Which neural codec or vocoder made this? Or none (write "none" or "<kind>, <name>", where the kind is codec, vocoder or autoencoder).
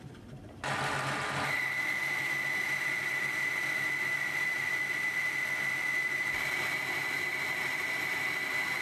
none